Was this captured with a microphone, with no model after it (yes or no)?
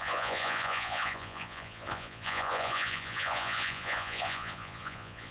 no